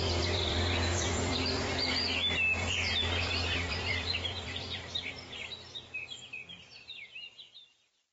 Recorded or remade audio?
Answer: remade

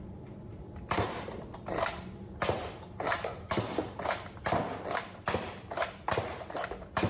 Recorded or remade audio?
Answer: remade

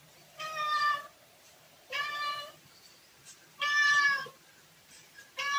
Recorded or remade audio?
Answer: remade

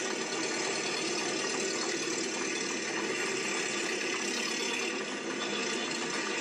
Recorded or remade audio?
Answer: recorded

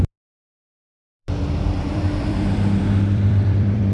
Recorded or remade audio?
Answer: remade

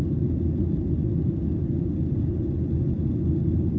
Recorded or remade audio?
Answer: recorded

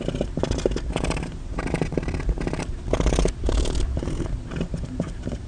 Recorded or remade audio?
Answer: remade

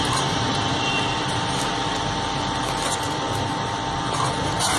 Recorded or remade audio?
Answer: remade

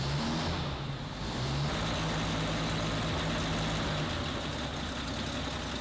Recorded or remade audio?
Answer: recorded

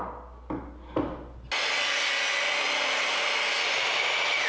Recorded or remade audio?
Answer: recorded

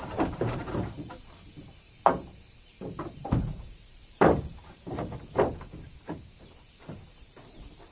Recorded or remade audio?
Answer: remade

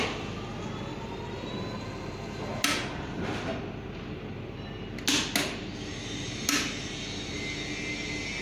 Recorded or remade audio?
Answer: recorded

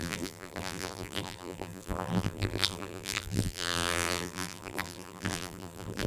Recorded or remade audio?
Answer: remade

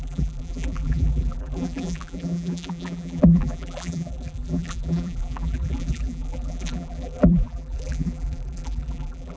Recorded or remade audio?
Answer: remade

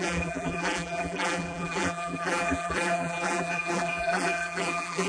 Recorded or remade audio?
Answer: remade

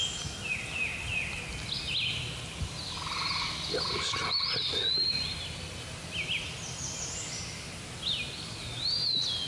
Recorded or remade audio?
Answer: recorded